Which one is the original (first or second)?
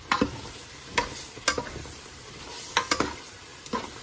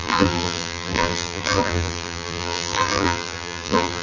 first